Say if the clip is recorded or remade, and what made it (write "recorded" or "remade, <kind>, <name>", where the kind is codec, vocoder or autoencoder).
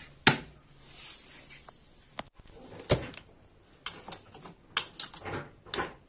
recorded